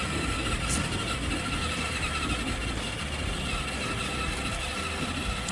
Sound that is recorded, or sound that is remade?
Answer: recorded